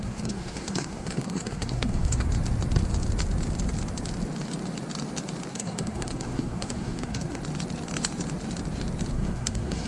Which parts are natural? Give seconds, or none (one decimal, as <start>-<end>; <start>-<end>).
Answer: 2.3-5.5; 7.4-9.1